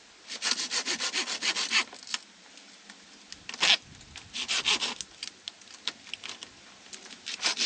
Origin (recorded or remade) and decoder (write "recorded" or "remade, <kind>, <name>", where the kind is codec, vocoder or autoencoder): recorded